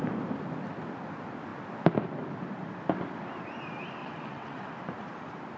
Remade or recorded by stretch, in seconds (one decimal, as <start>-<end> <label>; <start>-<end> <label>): 0.0-4.0 recorded; 4.0-4.7 remade; 4.7-5.6 recorded